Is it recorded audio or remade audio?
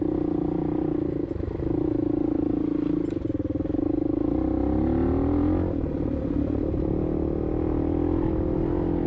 recorded